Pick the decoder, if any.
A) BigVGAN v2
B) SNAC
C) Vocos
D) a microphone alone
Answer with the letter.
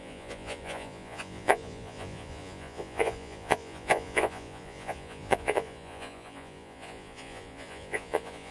C